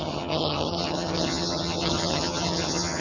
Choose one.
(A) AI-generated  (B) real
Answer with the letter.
A